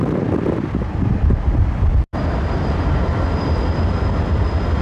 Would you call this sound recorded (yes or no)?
no